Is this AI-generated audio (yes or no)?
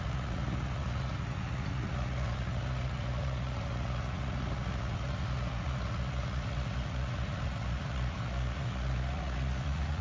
yes